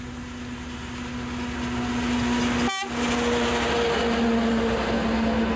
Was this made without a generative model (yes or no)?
yes